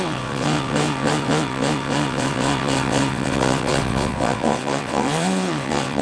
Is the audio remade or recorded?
remade